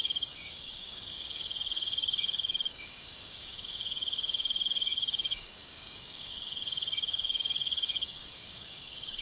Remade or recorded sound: remade